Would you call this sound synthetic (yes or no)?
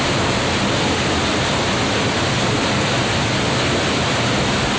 no